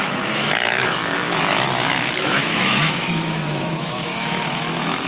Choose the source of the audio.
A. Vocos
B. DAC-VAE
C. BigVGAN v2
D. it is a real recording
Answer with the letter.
B